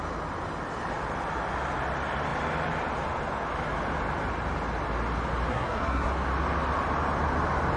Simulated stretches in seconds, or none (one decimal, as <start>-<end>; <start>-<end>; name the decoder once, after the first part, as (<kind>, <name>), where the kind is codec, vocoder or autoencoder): 5.5-6.1 (codec, SNAC)